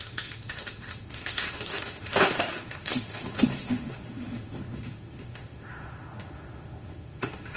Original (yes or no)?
no